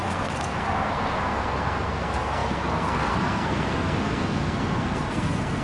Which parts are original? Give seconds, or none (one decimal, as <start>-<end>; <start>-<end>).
none